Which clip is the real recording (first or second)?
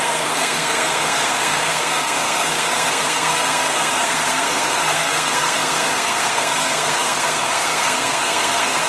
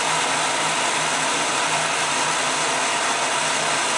second